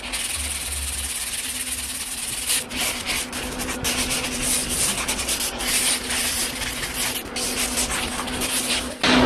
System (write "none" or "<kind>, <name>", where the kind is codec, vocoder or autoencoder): none